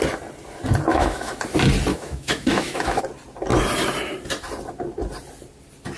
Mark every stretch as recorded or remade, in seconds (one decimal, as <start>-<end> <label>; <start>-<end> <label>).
0.0-0.9 recorded; 0.9-1.4 remade; 1.4-1.9 recorded; 1.9-3.0 remade; 3.0-6.0 recorded